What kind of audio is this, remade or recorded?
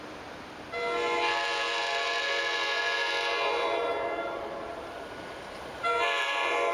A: recorded